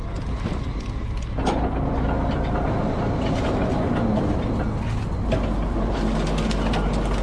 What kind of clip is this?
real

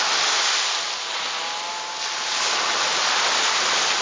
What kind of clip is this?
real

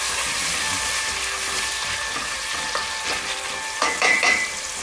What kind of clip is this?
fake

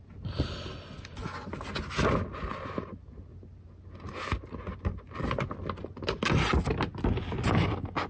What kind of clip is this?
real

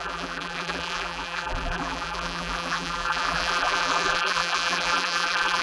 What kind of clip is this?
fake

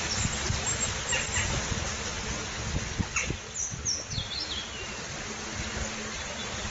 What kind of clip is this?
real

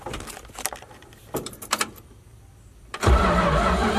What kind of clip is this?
fake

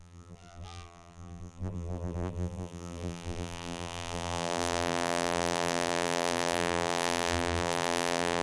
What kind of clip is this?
fake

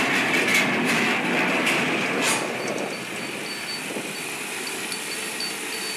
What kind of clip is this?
real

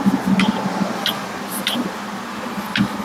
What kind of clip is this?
real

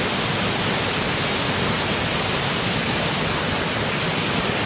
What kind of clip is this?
real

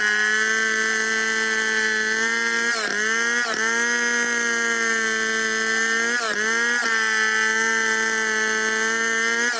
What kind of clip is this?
real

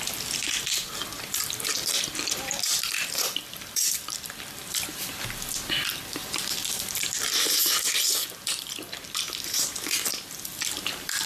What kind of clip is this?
fake